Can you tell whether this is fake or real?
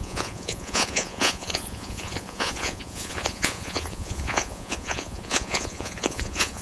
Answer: fake